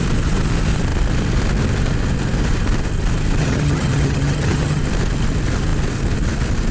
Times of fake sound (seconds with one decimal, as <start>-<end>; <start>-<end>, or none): 3.4-4.8